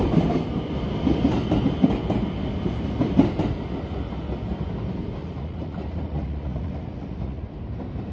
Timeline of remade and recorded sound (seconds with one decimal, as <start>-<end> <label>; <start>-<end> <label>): 0.0-5.2 recorded; 5.2-7.5 remade; 7.5-8.1 recorded